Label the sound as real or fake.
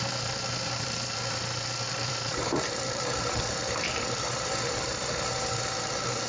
fake